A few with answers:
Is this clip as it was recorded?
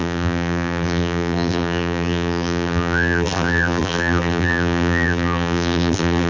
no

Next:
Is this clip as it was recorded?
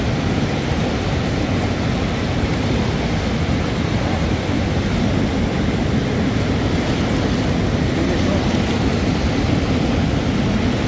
yes